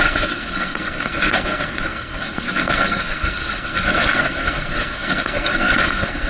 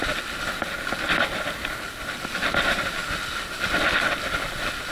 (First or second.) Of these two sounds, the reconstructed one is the first